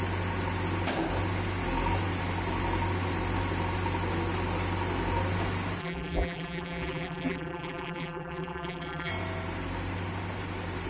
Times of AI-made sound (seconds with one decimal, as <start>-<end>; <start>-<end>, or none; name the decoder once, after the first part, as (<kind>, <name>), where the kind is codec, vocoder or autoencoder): 5.8-9.1 (vocoder, BigVGAN v2)